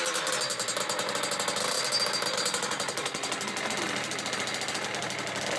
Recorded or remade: recorded